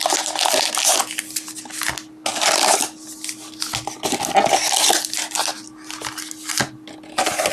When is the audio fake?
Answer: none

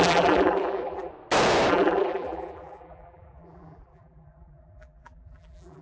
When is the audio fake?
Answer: 0.0-1.1 (vocoder, BigVGAN v2); 1.7-5.8